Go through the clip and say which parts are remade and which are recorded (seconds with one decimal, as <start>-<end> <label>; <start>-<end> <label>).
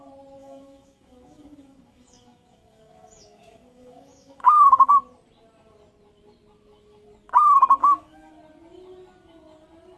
0.0-0.4 recorded; 0.4-4.9 remade; 4.9-7.8 recorded; 7.8-8.3 remade; 8.3-10.0 recorded